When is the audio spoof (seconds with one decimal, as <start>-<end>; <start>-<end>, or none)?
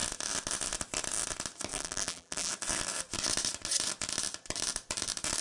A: 1.7-2.5